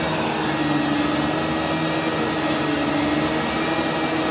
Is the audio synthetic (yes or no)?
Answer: no